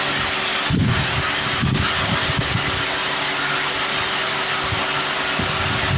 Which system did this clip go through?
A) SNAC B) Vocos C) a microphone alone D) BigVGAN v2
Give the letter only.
C